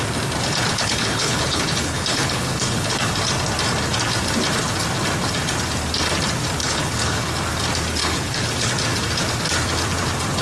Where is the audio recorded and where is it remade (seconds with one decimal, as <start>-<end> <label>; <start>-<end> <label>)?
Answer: 0.0-0.7 recorded; 0.7-3.1 remade; 3.1-6.6 recorded; 6.6-7.4 remade; 7.4-8.0 recorded; 8.0-8.7 remade; 8.7-10.4 recorded